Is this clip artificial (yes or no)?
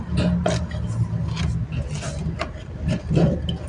no